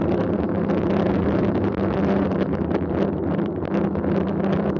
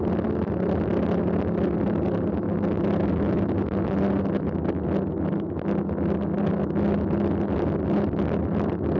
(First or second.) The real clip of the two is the second